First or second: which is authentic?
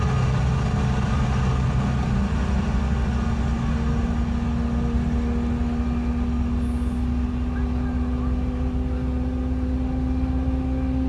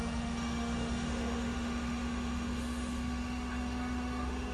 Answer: first